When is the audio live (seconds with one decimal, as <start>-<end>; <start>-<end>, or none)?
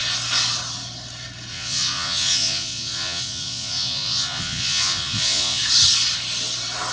0.0-1.5; 5.6-6.9